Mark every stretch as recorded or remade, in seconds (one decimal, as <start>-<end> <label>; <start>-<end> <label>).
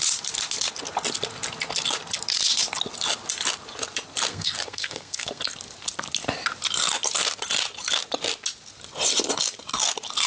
0.0-4.3 recorded; 4.3-5.4 remade; 5.4-10.3 recorded